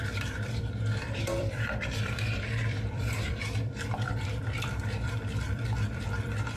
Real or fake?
fake